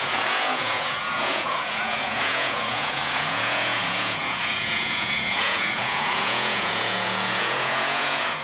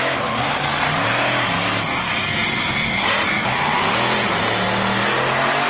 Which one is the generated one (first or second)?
first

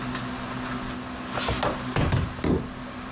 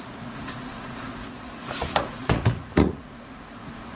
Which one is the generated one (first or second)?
second